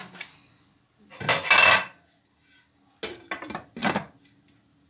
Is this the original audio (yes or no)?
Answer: yes